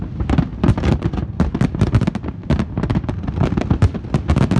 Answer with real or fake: real